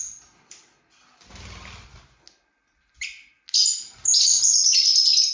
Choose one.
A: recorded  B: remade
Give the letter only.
A